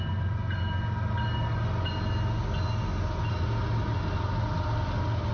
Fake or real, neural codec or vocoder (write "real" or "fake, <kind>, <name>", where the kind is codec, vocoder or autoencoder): real